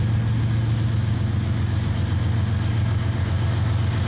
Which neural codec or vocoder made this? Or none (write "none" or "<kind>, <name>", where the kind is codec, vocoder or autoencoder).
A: none